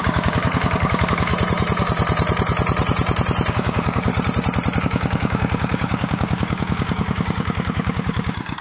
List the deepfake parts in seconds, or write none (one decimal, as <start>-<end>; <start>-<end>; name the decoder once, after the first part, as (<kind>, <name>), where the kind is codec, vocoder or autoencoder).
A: 0.0-1.3 (codec, DAC); 3.5-4.1; 4.8-8.6